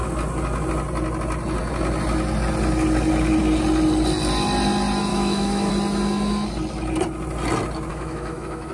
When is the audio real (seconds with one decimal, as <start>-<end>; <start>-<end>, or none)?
0.0-5.1; 5.7-7.9